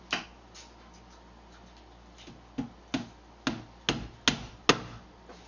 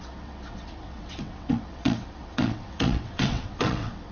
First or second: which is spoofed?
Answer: second